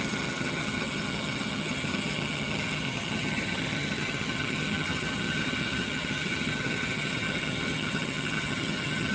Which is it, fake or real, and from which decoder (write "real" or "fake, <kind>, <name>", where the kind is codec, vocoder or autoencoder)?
fake, vocoder, HiFi-GAN